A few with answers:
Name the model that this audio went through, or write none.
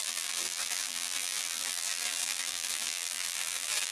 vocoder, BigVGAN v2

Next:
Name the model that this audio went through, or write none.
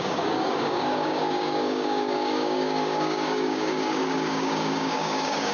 codec, DAC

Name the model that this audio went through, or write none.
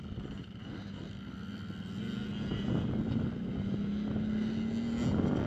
none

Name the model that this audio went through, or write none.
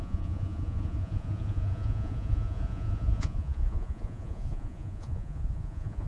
vocoder, Vocos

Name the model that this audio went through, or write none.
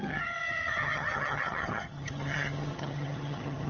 vocoder, HiFi-GAN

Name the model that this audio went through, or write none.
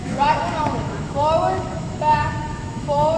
autoencoder, DAC-VAE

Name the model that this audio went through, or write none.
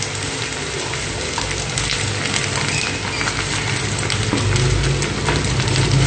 none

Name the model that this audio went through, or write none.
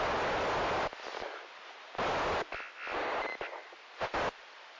vocoder, BigVGAN v2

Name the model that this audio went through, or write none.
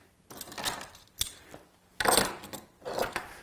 none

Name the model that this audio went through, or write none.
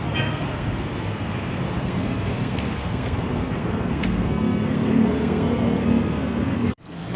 codec, SNAC